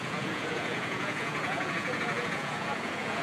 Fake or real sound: fake